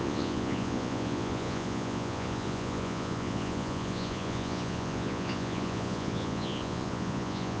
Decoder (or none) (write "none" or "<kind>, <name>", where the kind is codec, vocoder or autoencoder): vocoder, Vocos